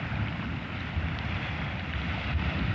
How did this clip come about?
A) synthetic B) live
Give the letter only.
B